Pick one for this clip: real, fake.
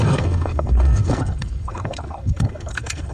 fake